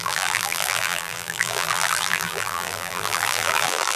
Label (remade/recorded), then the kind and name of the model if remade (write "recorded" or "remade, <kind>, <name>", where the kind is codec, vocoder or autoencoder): remade, vocoder, BigVGAN v2